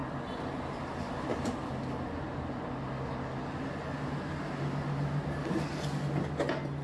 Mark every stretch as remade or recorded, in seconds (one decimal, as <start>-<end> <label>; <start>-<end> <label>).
0.0-6.8 recorded

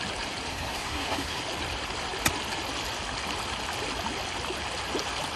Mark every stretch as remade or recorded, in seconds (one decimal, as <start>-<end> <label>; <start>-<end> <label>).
0.0-0.5 recorded; 0.5-1.4 remade; 1.4-5.4 recorded

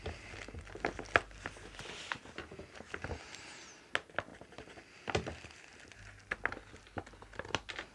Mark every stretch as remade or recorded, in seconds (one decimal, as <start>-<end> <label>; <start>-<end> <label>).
0.0-7.9 recorded

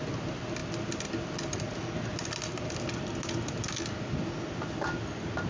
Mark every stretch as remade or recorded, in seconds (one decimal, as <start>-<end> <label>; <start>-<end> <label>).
0.0-5.5 recorded